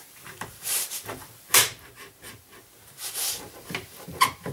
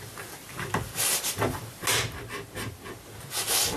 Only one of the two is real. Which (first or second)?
second